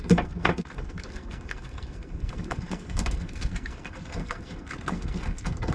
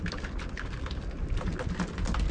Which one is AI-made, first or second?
first